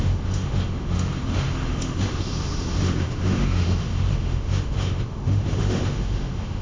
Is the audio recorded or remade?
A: remade